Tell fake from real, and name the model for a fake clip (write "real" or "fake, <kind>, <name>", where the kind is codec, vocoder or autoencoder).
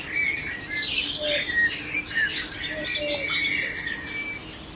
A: real